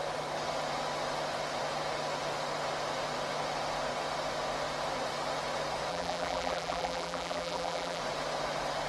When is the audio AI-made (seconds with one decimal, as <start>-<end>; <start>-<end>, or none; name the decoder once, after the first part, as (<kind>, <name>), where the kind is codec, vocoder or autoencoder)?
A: 5.9-8.0 (vocoder, BigVGAN v2)